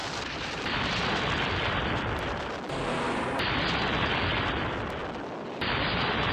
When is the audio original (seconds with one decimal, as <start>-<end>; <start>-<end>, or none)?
3.8-5.0